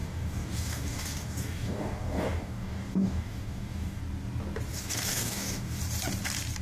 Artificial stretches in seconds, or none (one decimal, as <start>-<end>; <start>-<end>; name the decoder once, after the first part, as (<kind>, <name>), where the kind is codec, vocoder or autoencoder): 0.0-4.0 (codec, DAC); 4.7-5.8